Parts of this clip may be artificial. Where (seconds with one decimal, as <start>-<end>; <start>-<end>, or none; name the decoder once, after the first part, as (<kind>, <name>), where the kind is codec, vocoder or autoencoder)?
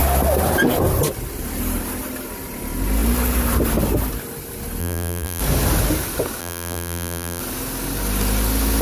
4.8-5.4 (vocoder, BigVGAN v2); 6.4-7.4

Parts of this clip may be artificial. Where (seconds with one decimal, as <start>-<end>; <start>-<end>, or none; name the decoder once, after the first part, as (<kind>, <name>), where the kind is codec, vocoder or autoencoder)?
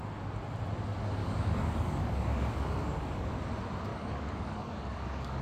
1.2-3.3 (codec, DAC); 3.9-5.4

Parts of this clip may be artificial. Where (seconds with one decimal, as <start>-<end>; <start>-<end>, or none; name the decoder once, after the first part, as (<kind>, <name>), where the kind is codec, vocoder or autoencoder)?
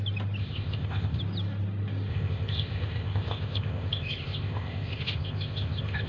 0.4-1.2 (codec, ZipCodec); 2.1-6.1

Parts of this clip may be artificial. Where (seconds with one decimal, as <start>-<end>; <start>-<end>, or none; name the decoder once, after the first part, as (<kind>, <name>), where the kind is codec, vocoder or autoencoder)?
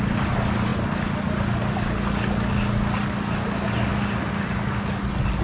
none